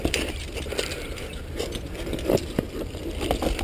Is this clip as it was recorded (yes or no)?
yes